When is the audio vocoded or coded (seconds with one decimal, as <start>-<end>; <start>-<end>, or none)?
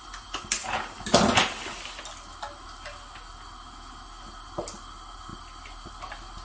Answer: none